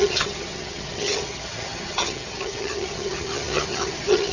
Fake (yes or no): yes